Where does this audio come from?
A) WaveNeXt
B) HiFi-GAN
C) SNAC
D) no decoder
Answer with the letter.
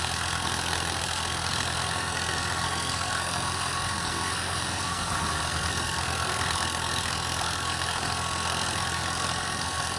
C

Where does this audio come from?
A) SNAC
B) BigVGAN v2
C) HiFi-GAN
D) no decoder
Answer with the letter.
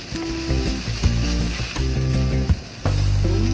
D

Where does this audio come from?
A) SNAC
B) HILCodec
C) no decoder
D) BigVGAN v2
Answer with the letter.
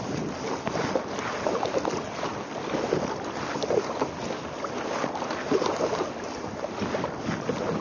C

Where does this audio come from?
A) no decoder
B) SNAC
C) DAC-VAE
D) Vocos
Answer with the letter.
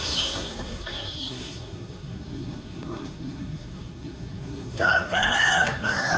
B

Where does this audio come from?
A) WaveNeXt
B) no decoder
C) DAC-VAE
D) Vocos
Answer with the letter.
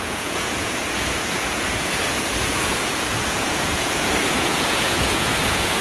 D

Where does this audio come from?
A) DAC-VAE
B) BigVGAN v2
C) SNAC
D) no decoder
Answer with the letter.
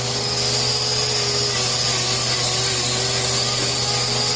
D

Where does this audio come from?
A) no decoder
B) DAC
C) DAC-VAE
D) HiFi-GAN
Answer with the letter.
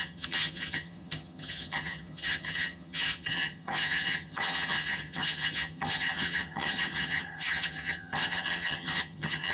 D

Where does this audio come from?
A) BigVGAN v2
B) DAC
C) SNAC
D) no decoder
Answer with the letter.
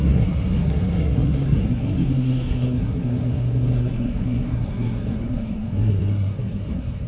C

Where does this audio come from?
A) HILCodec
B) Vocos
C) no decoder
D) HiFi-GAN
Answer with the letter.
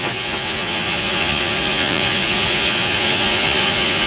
B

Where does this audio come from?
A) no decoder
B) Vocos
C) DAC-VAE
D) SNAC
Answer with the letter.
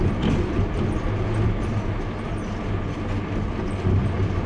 A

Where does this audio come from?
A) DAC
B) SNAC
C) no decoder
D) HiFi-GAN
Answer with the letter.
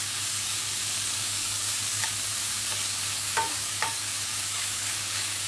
A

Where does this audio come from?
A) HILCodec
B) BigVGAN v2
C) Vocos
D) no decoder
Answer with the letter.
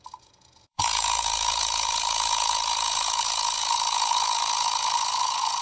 C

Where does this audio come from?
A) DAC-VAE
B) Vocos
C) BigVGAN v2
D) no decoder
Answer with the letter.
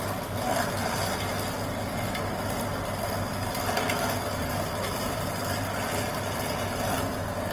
D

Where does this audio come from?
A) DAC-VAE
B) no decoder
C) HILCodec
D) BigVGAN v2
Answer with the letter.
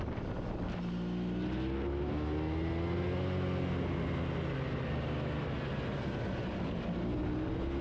B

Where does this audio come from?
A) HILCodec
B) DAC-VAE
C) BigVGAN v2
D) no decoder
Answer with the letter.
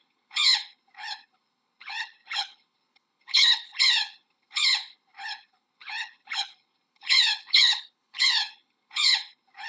A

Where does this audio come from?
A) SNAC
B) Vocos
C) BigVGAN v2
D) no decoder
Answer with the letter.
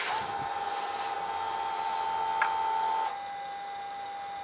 D